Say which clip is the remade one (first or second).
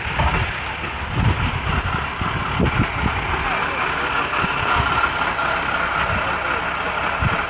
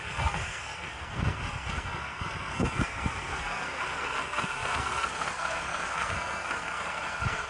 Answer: second